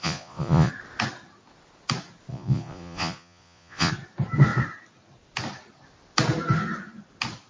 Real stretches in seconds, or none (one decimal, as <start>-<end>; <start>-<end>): 0.7-2.3; 3.9-7.5